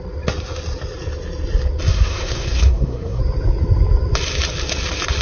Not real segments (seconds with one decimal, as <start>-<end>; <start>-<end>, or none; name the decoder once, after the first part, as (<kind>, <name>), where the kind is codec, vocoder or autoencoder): 1.9-3.2 (codec, SNAC)